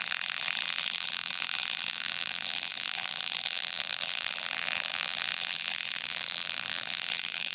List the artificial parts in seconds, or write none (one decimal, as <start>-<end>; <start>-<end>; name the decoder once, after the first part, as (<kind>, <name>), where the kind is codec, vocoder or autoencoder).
0.0-7.5 (vocoder, BigVGAN v2)